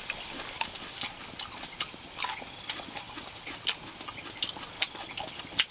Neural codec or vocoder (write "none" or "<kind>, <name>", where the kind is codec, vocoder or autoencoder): none